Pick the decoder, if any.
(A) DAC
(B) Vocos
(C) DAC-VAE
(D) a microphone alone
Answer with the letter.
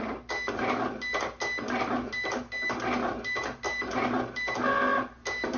D